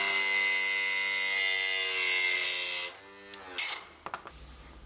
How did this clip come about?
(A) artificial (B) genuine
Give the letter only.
B